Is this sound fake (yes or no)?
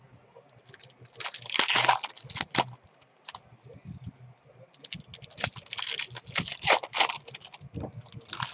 no